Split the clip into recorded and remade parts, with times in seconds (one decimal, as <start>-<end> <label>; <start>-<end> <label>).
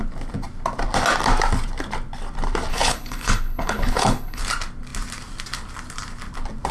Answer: 0.0-2.7 recorded; 2.7-4.4 remade; 4.4-6.7 recorded